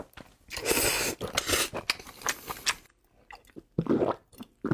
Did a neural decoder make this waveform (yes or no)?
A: no